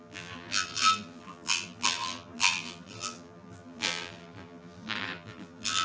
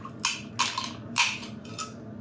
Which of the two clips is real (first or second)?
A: second